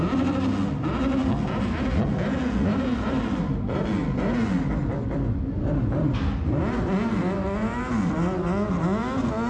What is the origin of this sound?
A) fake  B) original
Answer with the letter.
B